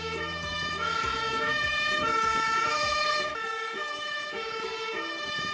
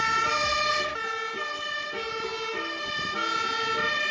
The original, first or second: second